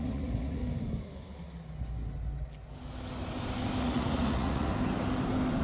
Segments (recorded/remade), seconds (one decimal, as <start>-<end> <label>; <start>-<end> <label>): 0.0-0.6 remade; 0.6-3.8 recorded; 3.8-4.7 remade; 4.7-5.6 recorded